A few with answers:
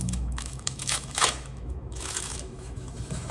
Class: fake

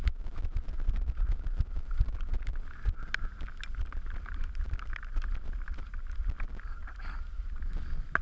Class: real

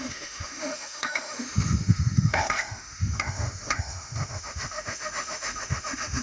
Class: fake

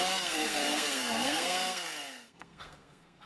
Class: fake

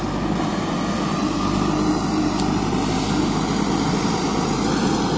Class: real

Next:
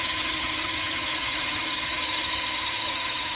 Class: fake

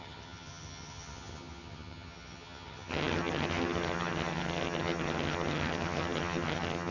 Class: fake